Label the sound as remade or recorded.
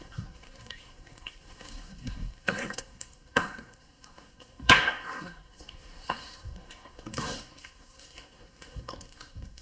remade